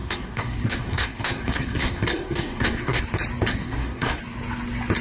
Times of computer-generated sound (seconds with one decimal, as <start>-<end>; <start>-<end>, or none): 0.0-3.0; 3.5-4.2